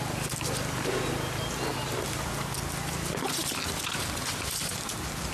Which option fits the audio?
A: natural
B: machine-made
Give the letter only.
A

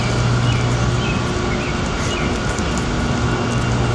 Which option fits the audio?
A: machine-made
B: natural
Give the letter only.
B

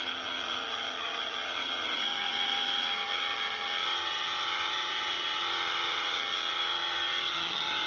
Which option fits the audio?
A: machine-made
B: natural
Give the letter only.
A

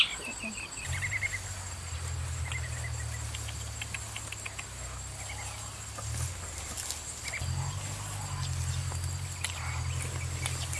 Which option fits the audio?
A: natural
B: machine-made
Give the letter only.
A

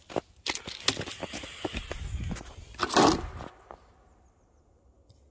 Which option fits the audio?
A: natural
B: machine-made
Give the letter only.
A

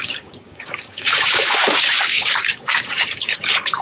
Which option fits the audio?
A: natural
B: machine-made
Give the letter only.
B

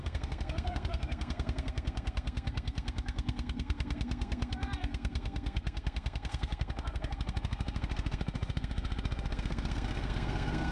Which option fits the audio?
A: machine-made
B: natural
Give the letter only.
A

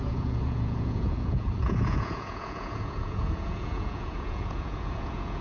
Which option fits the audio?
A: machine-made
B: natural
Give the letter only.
A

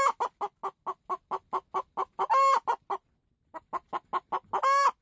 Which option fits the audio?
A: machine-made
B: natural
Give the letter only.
B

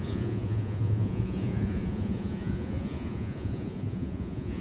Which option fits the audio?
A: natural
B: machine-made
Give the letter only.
B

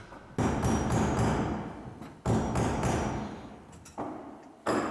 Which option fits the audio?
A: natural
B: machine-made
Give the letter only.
A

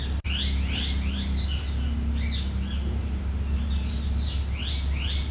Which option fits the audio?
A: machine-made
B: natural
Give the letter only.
B